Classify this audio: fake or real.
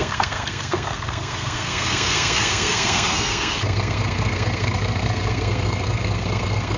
fake